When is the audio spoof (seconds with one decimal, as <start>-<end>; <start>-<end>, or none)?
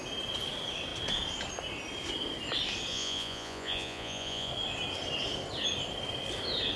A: 2.9-4.5